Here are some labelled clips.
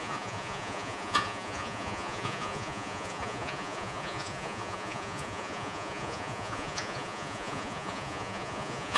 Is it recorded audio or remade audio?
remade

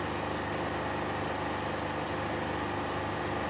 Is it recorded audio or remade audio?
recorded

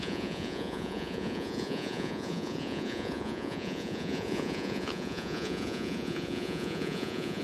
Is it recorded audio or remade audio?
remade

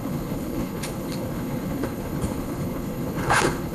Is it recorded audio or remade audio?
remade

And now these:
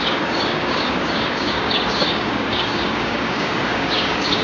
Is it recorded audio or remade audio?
remade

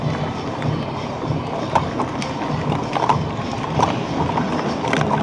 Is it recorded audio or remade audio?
recorded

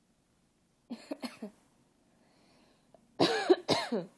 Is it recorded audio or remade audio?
recorded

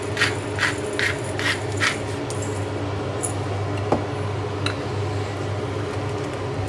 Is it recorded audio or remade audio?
recorded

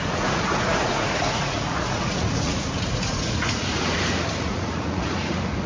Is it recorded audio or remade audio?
remade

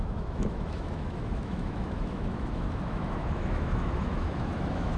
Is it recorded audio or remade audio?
remade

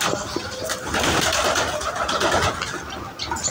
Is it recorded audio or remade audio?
recorded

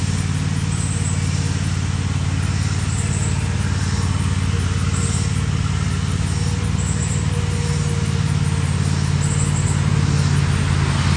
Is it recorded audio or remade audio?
recorded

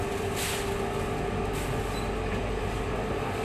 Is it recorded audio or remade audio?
recorded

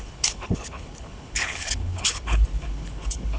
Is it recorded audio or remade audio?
remade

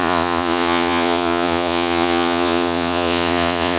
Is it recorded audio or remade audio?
remade